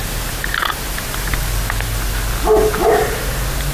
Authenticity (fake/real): real